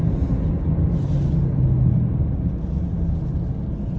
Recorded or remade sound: recorded